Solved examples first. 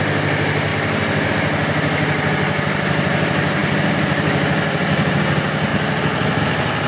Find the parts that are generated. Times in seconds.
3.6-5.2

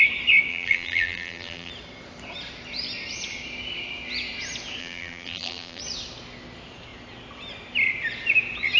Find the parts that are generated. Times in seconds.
0.5-1.7; 4.8-5.8

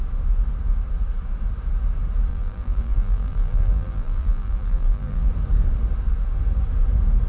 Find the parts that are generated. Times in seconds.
2.3-5.3

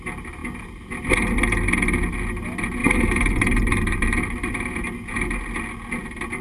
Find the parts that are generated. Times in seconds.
2.8-4.5

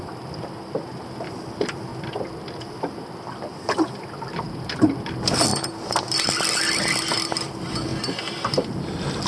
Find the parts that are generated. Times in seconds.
0.0-1.9; 2.7-7.9